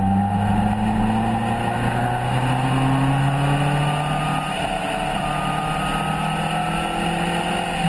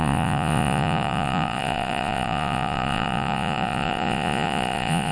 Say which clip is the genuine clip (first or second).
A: first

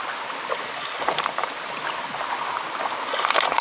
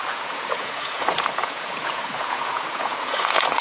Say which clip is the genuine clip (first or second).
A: first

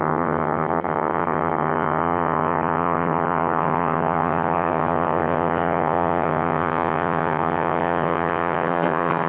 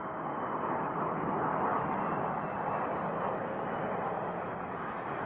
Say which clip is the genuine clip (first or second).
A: second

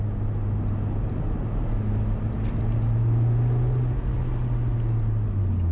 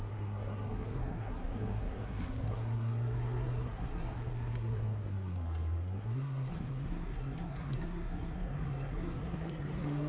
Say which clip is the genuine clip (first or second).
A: first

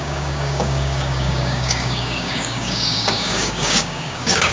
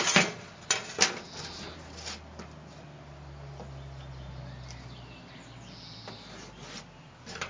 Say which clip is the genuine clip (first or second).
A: second